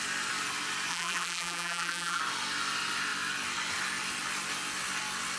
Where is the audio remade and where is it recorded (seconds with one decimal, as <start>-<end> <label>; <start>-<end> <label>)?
0.0-0.9 recorded; 0.9-2.2 remade; 2.2-5.4 recorded